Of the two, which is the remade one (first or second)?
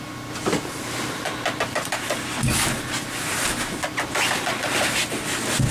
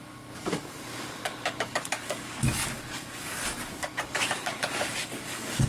second